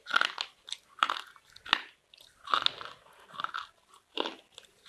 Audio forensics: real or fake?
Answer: real